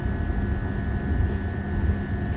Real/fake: real